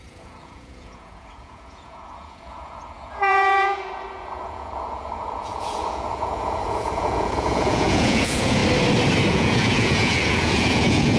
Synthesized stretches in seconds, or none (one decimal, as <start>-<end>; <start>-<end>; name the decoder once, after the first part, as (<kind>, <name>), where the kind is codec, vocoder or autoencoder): 0.0-8.6 (vocoder, Vocos); 9.3-11.2